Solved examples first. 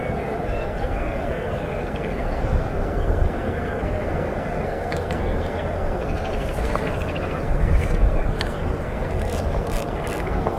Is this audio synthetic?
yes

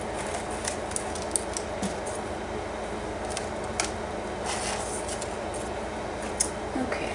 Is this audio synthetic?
no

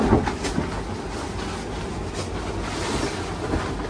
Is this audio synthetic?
no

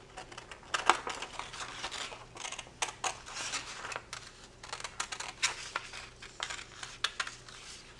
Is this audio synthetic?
no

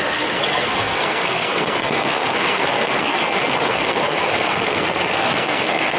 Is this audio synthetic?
yes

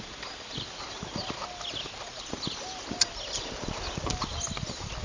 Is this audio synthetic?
no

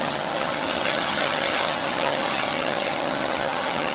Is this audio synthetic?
yes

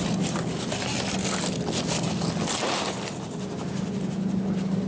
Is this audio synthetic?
no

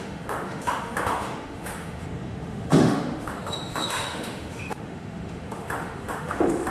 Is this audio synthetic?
yes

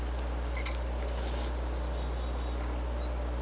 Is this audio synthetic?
no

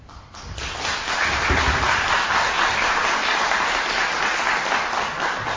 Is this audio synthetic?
no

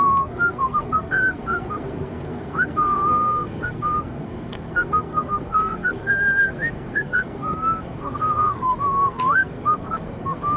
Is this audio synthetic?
yes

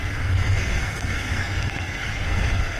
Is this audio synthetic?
yes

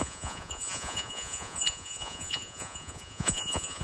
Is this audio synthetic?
yes